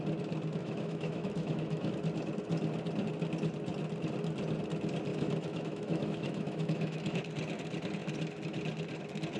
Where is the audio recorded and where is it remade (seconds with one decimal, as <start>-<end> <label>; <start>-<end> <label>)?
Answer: 0.0-0.6 recorded; 0.6-1.9 remade; 1.9-5.1 recorded; 5.1-7.2 remade; 7.2-9.4 recorded